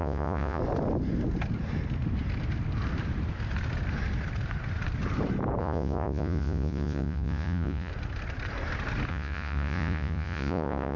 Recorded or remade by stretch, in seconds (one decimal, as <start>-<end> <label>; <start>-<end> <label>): 0.0-0.6 remade; 0.6-5.6 recorded; 5.6-7.9 remade; 7.9-9.1 recorded; 9.1-11.0 remade